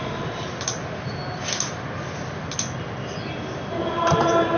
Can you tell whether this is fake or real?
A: real